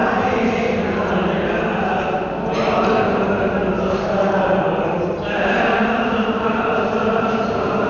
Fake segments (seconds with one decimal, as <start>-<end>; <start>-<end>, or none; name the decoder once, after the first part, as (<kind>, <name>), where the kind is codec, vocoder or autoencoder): 3.9-7.9 (vocoder, BigVGAN v2)